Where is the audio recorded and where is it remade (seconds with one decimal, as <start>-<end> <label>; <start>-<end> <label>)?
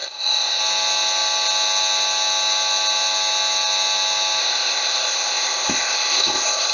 0.0-0.6 remade; 0.6-4.4 recorded; 4.4-6.7 remade